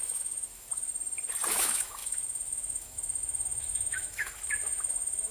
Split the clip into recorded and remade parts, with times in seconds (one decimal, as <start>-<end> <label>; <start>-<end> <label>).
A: 0.0-0.9 remade; 0.9-1.5 recorded; 1.5-5.3 remade

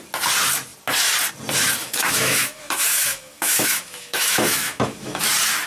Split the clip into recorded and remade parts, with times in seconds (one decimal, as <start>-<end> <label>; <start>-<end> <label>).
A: 0.0-1.8 recorded; 1.8-5.2 remade; 5.2-5.7 recorded

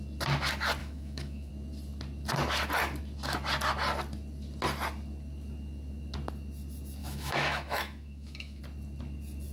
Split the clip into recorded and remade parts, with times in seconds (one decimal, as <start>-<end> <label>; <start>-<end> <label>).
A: 0.0-0.8 recorded; 0.8-1.5 remade; 1.5-7.0 recorded; 7.0-8.6 remade; 8.6-9.5 recorded

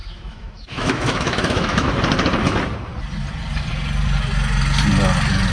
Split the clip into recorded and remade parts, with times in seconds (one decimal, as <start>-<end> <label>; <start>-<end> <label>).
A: 0.0-1.9 remade; 1.9-5.5 recorded

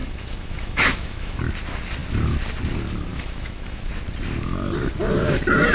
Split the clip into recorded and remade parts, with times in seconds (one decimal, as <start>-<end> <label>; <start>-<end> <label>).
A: 0.0-1.4 remade; 1.4-3.1 recorded; 3.1-3.9 remade; 3.9-5.7 recorded

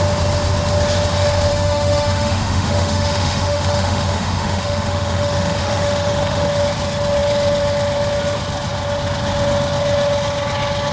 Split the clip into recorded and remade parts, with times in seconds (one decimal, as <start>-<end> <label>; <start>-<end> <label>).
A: 0.0-1.5 recorded; 1.5-6.5 remade; 6.5-10.9 recorded

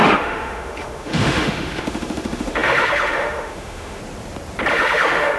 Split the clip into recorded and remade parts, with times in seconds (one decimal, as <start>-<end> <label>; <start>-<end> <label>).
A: 0.0-4.0 remade; 4.0-4.7 recorded; 4.7-5.4 remade

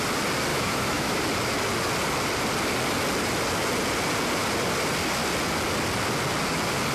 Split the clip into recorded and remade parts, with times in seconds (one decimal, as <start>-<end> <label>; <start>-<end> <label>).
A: 0.0-0.5 recorded; 0.5-1.2 remade; 1.2-6.9 recorded